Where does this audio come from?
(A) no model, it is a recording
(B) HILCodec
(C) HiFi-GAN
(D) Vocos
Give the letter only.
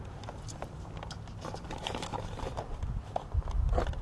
A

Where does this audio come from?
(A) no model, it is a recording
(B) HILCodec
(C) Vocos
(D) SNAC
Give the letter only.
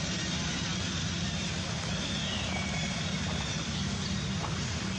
A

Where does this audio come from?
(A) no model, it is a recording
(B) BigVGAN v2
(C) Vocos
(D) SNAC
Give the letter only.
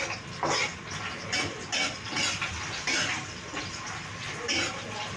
A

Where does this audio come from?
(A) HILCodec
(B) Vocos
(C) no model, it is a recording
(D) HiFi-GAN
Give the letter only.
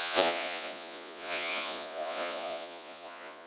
B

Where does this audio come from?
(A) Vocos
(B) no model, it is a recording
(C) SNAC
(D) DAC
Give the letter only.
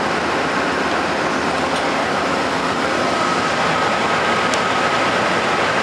B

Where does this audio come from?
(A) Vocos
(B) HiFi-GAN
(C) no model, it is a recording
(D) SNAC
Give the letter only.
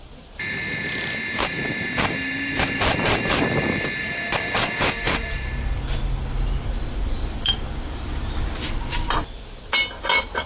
C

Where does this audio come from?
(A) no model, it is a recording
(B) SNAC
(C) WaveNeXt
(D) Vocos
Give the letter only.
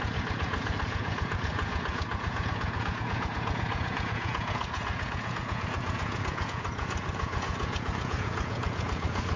D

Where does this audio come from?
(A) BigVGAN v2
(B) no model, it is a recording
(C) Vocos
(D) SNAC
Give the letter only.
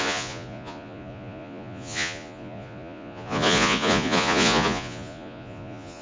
C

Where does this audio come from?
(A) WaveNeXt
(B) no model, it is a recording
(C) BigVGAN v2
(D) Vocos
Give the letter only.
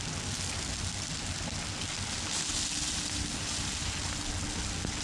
B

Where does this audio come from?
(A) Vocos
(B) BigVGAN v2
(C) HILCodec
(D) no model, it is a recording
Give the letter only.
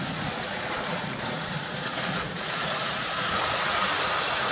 A